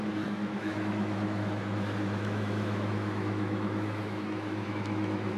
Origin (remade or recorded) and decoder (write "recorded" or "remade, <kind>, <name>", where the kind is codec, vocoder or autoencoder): remade, autoencoder, DAC-VAE